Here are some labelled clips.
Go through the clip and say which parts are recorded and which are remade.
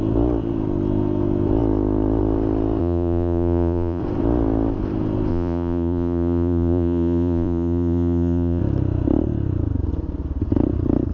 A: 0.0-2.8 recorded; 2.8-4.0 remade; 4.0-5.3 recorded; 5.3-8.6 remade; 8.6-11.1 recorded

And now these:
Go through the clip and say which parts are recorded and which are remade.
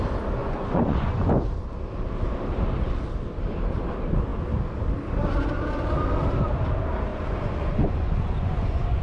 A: 0.0-0.4 recorded; 0.4-1.3 remade; 1.3-7.1 recorded; 7.1-9.0 remade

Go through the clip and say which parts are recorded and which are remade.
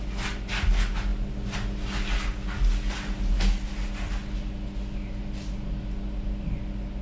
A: 0.0-7.0 recorded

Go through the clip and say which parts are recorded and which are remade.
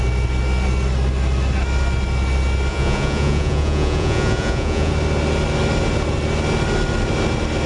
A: 0.0-2.7 recorded; 2.7-4.9 remade; 4.9-7.7 recorded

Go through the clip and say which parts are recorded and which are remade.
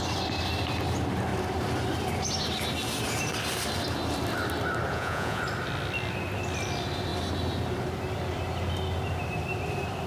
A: 0.0-4.9 recorded; 4.9-5.4 remade; 5.4-10.1 recorded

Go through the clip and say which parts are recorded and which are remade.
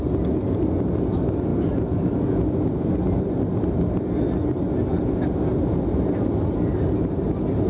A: 0.0-7.7 recorded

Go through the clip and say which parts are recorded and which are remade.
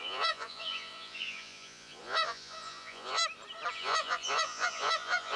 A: 0.0-3.2 remade; 3.2-3.7 recorded; 3.7-5.4 remade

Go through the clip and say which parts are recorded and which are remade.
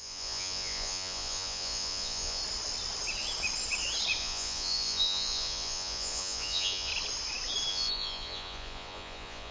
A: 0.0-2.4 remade; 2.4-4.2 recorded; 4.2-6.9 remade; 6.9-7.7 recorded; 7.7-9.5 remade